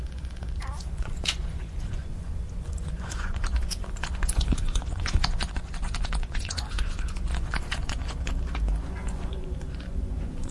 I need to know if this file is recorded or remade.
remade